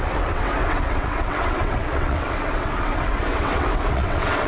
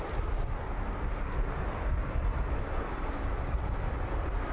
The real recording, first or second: second